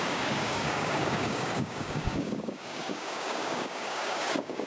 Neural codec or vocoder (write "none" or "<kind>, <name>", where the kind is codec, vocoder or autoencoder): codec, DAC